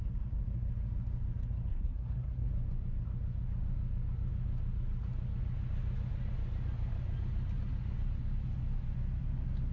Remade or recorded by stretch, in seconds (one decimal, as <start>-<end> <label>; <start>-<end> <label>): 0.0-1.7 recorded; 1.7-2.5 remade; 2.5-9.7 recorded